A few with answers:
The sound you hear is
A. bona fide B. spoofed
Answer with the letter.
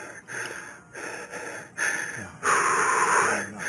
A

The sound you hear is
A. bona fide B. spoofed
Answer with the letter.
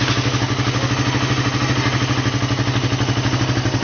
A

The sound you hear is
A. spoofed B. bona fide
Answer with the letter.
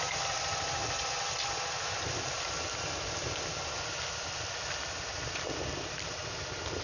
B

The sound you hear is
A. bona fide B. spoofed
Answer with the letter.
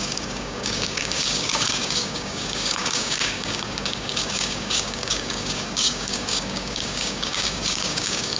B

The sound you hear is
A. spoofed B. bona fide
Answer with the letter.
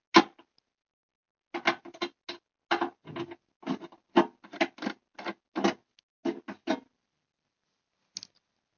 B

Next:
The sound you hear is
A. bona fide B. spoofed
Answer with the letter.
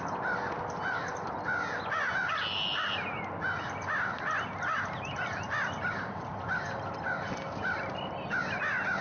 A